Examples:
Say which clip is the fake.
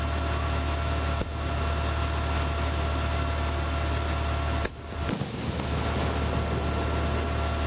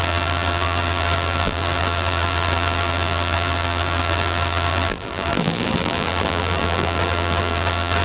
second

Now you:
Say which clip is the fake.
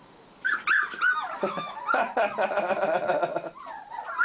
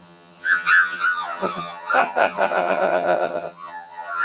second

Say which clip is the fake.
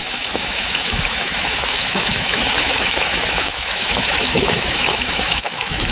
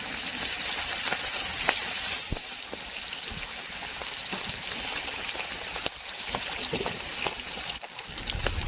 first